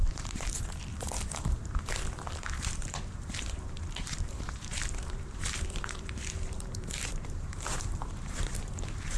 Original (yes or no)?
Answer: no